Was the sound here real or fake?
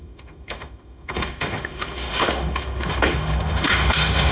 fake